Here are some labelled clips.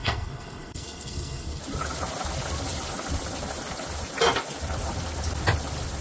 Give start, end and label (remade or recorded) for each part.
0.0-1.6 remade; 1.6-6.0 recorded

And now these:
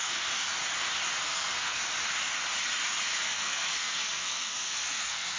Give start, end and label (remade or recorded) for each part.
0.0-0.5 remade; 0.5-1.2 recorded; 1.2-1.8 remade; 1.8-3.2 recorded; 3.2-5.4 remade

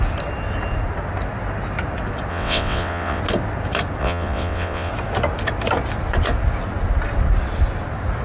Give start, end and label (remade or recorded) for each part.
0.0-2.3 recorded; 2.3-3.2 remade; 3.2-4.0 recorded; 4.0-4.9 remade; 4.9-8.2 recorded

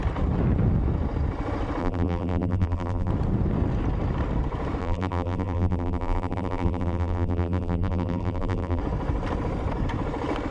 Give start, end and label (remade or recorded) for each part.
0.0-1.8 recorded; 1.8-3.1 remade; 3.1-4.8 recorded; 4.8-8.8 remade; 8.8-10.5 recorded